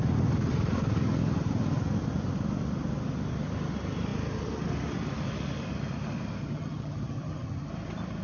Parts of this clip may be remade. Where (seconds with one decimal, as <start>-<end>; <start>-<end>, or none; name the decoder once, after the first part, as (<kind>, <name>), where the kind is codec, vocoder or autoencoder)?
6.4-7.7 (vocoder, HiFi-GAN)